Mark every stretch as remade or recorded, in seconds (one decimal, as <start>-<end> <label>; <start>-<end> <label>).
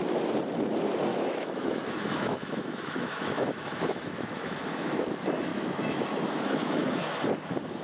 0.0-1.1 recorded; 1.1-5.1 remade; 5.1-5.5 recorded; 5.5-7.2 remade; 7.2-7.8 recorded